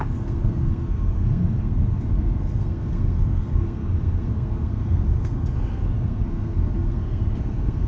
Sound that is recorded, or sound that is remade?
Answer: remade